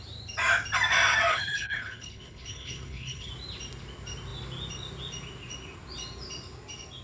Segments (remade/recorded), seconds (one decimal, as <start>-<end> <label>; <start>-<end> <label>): 0.0-1.3 recorded; 1.3-3.3 remade; 3.3-7.0 recorded